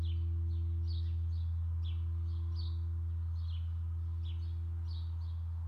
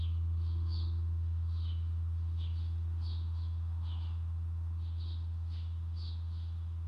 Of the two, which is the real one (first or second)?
first